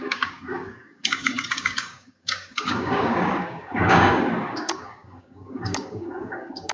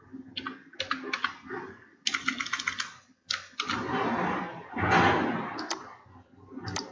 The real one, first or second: second